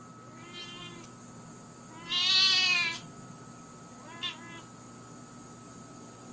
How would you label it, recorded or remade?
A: recorded